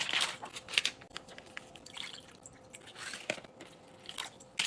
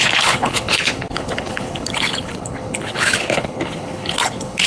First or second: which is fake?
second